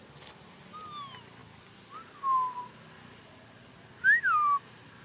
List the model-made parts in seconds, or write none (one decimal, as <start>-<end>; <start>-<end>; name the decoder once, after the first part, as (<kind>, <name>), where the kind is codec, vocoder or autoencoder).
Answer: none